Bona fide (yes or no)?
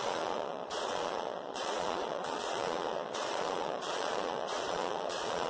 no